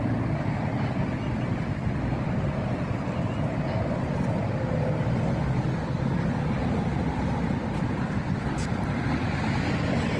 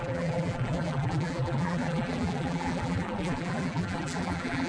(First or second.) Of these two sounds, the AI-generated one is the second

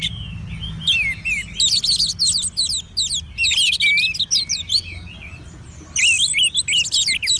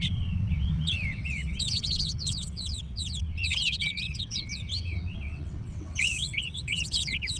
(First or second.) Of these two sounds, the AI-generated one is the second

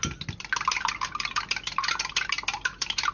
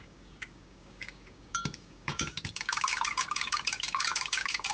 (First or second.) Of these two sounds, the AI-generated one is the second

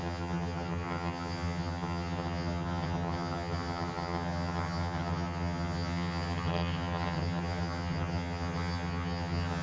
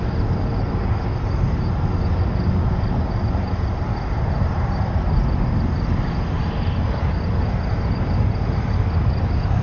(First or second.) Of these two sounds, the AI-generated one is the first